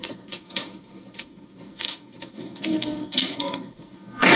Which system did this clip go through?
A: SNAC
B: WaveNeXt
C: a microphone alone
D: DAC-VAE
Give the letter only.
A